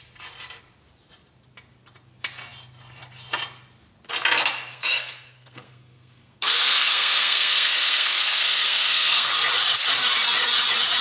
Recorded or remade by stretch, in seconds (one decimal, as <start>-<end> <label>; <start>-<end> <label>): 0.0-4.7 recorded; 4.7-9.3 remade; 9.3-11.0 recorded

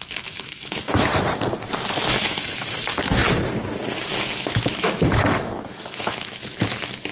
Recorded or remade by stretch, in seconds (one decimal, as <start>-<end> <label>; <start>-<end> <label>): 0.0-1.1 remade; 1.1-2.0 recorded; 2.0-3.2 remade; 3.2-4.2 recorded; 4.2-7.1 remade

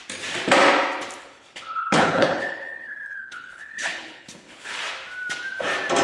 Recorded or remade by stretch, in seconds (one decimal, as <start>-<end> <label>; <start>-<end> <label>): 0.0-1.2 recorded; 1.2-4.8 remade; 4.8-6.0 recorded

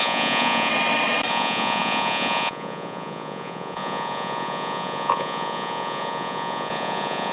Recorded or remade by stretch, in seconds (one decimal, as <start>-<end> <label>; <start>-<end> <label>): 0.0-0.7 remade; 0.7-1.3 recorded; 1.3-7.3 remade

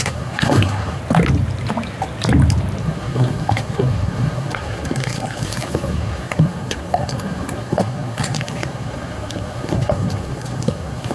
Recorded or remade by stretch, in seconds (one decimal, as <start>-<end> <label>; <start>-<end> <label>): 0.0-1.0 remade; 1.0-2.8 recorded; 2.8-11.1 remade

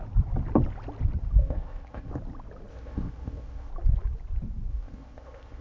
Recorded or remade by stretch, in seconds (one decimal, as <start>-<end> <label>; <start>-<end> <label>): 0.0-1.4 recorded; 1.4-2.1 remade; 2.1-2.7 recorded; 2.7-3.7 remade; 3.7-4.7 recorded; 4.7-5.6 remade

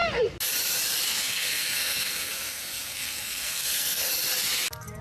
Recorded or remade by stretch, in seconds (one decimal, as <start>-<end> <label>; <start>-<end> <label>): 0.0-1.1 recorded; 1.1-4.1 remade; 4.1-5.0 recorded

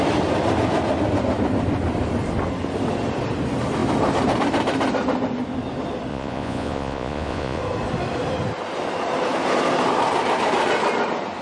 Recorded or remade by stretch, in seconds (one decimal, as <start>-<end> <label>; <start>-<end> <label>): 0.0-6.1 recorded; 6.1-7.6 remade; 7.6-11.4 recorded